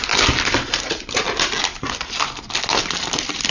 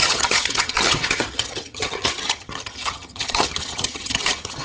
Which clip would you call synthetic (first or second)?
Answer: second